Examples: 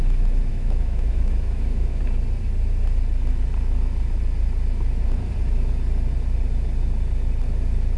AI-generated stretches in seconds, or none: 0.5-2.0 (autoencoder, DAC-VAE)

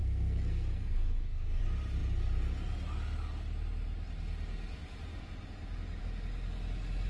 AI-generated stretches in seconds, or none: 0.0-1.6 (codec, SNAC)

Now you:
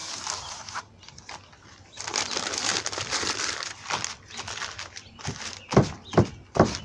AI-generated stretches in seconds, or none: 0.0-0.9 (vocoder, BigVGAN v2)

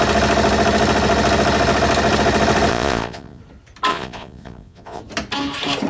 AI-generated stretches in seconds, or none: 2.7-3.4 (vocoder, Vocos); 3.9-5.0